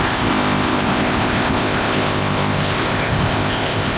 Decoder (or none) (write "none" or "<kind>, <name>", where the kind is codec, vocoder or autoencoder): codec, ZipCodec